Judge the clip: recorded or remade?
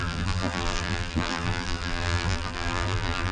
remade